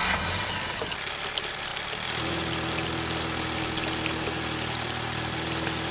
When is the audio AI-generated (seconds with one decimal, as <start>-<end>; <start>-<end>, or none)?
none

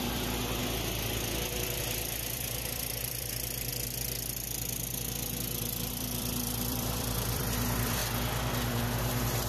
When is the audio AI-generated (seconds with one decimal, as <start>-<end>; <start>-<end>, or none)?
0.0-0.6; 1.8-3.7; 5.9-8.0; 8.8-9.5